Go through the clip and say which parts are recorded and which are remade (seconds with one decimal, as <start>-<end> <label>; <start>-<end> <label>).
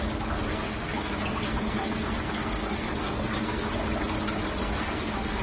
0.0-0.5 recorded; 0.5-3.7 remade; 3.7-4.6 recorded; 4.6-5.4 remade